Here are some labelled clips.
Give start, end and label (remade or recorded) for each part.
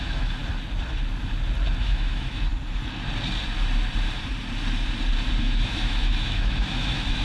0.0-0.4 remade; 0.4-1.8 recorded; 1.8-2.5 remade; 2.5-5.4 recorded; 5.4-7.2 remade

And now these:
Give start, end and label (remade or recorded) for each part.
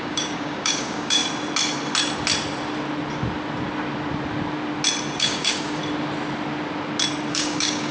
0.0-1.2 remade; 1.2-5.2 recorded; 5.2-5.8 remade; 5.8-7.3 recorded; 7.3-7.9 remade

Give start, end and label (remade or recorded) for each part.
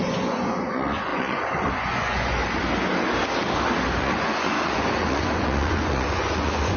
0.0-2.4 remade; 2.4-4.0 recorded; 4.0-6.8 remade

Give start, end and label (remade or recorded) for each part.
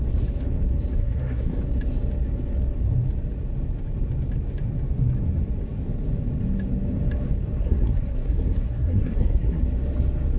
0.0-1.0 recorded; 1.0-1.6 remade; 1.6-7.6 recorded; 7.6-9.6 remade; 9.6-10.4 recorded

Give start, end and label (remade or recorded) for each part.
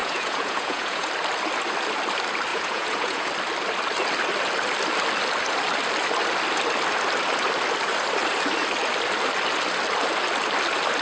0.0-1.1 remade; 1.1-2.5 recorded; 2.5-3.3 remade; 3.3-11.0 recorded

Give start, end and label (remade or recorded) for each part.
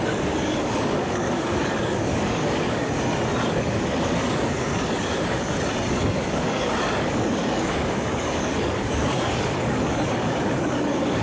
0.0-2.8 remade; 2.8-3.5 recorded; 3.5-5.5 remade; 5.5-6.0 recorded; 6.0-11.2 remade